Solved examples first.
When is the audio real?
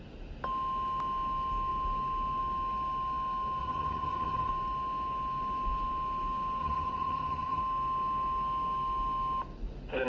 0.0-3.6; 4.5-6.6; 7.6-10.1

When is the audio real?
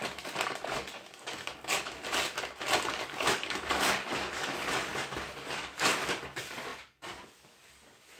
2.0-2.9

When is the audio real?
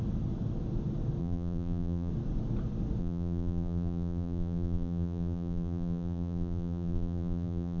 0.0-1.2; 2.1-3.0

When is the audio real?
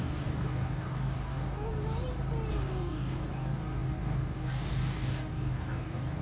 1.7-2.5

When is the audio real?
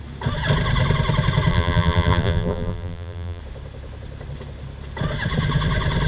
0.0-1.5; 3.4-6.1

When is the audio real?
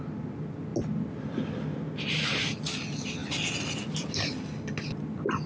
0.0-5.5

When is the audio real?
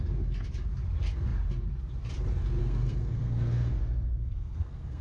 0.0-2.6